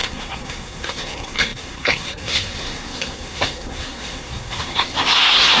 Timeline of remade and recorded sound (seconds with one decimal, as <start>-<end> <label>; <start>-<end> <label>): 0.0-5.6 remade